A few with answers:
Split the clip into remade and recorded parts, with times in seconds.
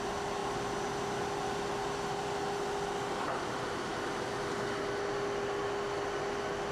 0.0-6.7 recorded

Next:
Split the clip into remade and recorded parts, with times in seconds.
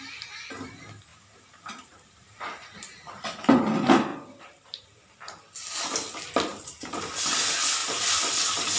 0.0-1.1 recorded; 1.1-3.6 remade; 3.6-4.1 recorded; 4.1-5.0 remade; 5.0-6.5 recorded; 6.5-7.3 remade; 7.3-8.8 recorded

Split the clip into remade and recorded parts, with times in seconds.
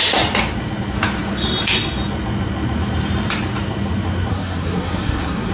0.0-4.3 recorded; 4.3-5.5 remade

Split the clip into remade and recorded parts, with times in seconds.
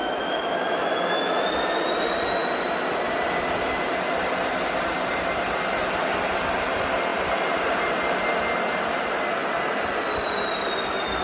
0.0-1.4 remade; 1.4-11.2 recorded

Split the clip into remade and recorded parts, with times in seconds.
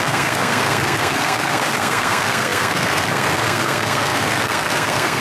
0.0-5.2 remade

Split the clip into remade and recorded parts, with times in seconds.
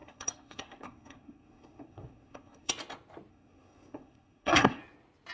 0.0-2.7 remade; 2.7-3.3 recorded; 3.3-4.8 remade; 4.8-5.3 recorded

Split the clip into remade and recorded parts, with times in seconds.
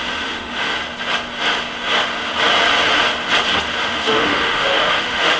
0.0-0.7 remade; 0.7-3.8 recorded; 3.8-5.4 remade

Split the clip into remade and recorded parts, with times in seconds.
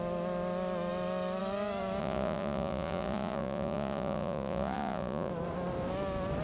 0.0-2.0 recorded; 2.0-5.3 remade; 5.3-6.4 recorded